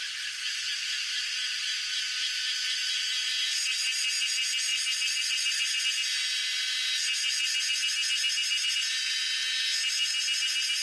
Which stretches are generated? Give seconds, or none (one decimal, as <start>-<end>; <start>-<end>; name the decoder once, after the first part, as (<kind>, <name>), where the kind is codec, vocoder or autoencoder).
4.7-5.8 (vocoder, BigVGAN v2)